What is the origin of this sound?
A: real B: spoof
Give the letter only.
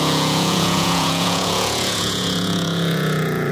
B